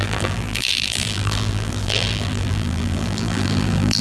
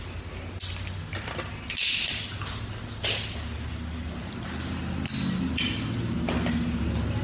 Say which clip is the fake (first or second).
first